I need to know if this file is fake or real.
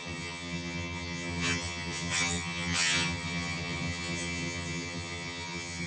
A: fake